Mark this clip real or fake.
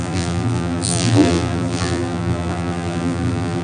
fake